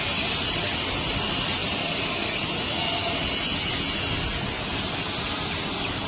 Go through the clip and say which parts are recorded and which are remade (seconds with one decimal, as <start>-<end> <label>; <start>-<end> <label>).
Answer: 0.0-1.6 recorded; 1.6-2.1 remade; 2.1-6.1 recorded